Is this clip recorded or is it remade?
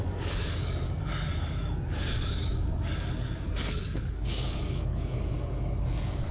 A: remade